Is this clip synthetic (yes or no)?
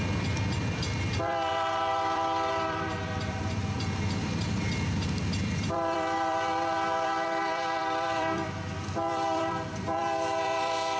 yes